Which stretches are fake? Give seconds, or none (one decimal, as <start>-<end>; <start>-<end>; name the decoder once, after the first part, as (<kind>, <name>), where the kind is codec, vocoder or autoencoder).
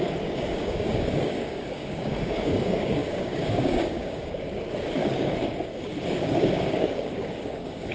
0.0-7.9 (codec, DAC)